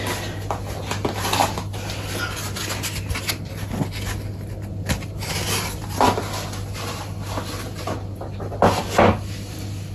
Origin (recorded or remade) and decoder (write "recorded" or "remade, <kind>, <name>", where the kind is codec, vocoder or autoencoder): recorded